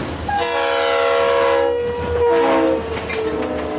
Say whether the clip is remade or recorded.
recorded